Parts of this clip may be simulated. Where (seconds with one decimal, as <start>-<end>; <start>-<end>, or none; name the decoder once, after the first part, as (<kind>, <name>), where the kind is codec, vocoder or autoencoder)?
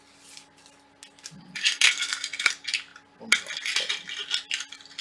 1.6-2.5 (codec, SNAC)